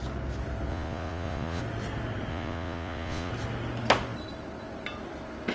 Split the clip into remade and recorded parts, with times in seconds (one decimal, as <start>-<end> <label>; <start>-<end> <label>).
0.0-0.7 recorded; 0.7-1.6 remade; 1.6-2.3 recorded; 2.3-3.3 remade; 3.3-5.5 recorded